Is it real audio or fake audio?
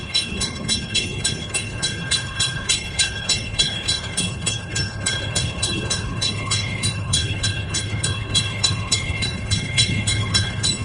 fake